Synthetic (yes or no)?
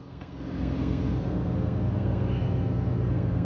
yes